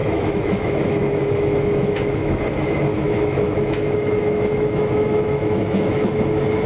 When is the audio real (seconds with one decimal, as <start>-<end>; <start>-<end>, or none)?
2.4-2.9; 6.2-6.7